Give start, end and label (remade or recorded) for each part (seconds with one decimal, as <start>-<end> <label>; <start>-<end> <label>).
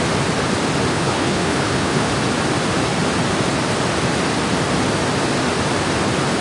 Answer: 0.0-0.9 recorded; 0.9-2.1 remade; 2.1-6.4 recorded